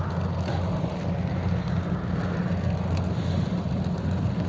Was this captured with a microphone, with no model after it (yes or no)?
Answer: yes